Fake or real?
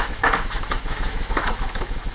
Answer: fake